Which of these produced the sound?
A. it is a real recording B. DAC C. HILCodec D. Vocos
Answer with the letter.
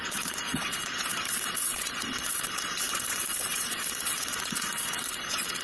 D